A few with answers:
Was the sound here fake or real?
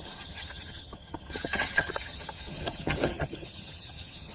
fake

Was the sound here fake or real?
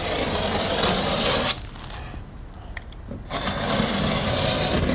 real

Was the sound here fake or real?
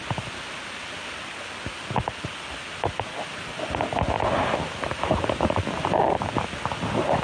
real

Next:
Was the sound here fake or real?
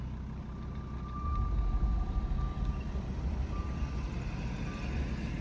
real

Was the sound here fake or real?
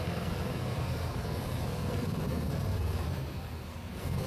fake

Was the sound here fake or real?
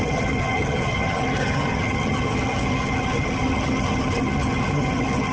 fake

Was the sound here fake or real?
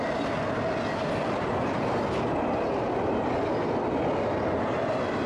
real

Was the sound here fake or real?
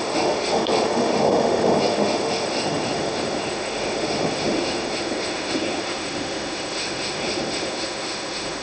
fake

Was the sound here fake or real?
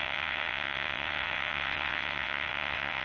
fake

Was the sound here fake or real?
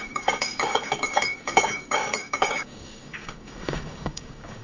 fake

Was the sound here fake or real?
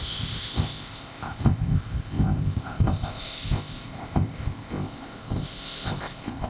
fake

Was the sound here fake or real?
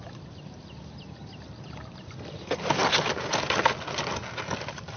real